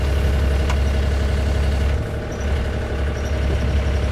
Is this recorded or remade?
recorded